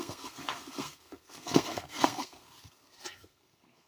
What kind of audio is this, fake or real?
fake